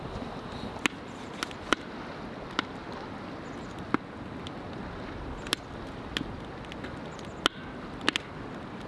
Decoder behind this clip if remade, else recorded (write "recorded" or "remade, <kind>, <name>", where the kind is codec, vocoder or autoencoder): recorded